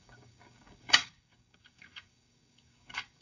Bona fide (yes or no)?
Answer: no